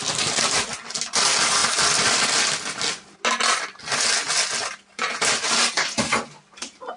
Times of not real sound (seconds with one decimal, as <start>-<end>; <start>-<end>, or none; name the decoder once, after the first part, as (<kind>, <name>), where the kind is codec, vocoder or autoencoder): none